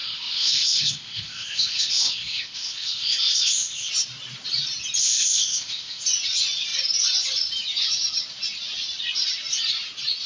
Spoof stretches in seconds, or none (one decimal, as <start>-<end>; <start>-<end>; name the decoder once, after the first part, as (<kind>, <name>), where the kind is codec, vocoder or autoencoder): 0.0-3.9 (codec, ZipCodec); 5.0-6.0